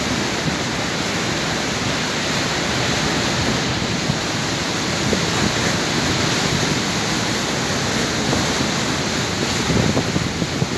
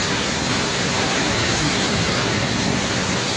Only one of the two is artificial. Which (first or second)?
second